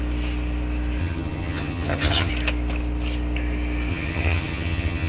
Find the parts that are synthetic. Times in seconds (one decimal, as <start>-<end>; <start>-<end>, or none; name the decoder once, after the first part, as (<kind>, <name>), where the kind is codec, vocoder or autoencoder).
1.0-2.3 (vocoder, HiFi-GAN); 3.9-5.1